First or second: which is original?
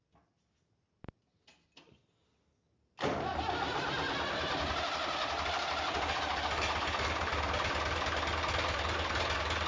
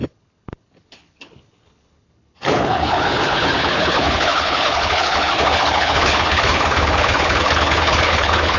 first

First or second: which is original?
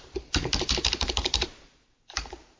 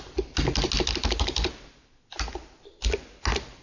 second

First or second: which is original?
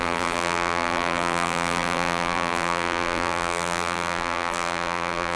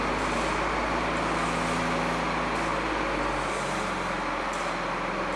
second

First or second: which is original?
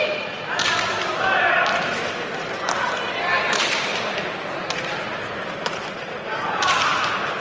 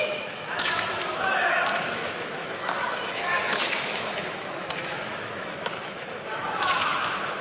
first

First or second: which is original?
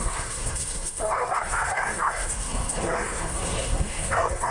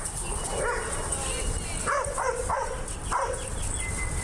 second